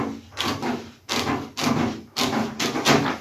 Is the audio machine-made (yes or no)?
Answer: yes